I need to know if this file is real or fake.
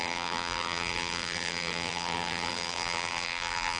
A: fake